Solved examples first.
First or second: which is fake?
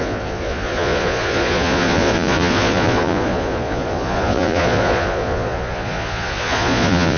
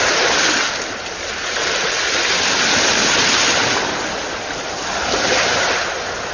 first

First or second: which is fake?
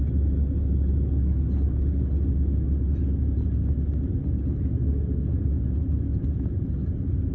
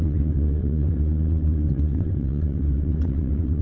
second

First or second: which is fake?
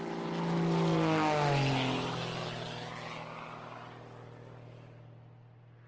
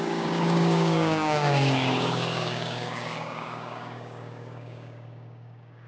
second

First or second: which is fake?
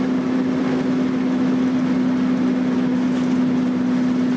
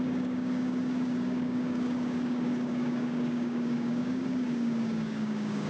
second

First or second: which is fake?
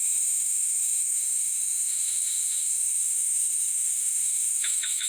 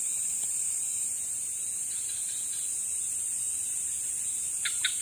first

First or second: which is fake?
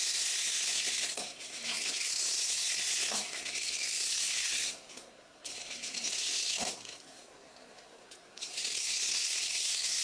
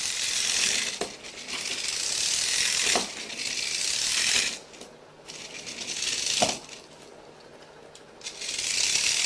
first